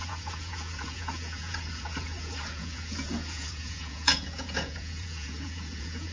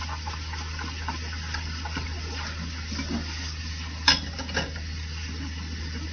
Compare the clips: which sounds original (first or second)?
second